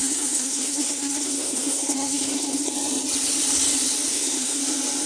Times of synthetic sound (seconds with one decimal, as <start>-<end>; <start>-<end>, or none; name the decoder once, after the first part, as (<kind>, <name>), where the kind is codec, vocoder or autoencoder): 0.0-2.7 (codec, SNAC); 4.1-4.6